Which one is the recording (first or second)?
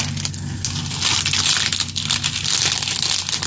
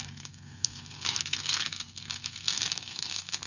first